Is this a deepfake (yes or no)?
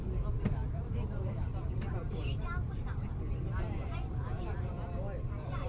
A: yes